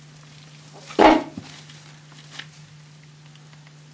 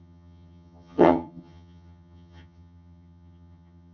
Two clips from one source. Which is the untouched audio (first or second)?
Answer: first